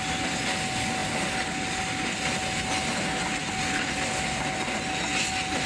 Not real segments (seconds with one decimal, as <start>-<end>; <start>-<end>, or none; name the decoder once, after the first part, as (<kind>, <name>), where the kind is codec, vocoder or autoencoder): none